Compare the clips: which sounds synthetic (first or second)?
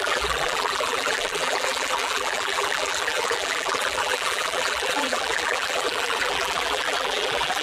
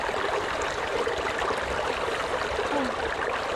first